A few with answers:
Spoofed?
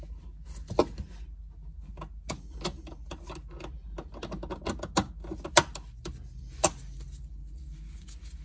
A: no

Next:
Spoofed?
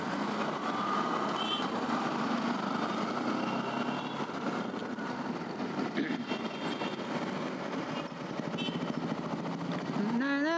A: no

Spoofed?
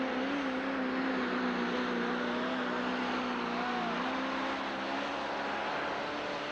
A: no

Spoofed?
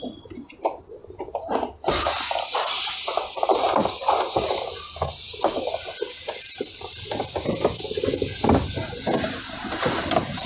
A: no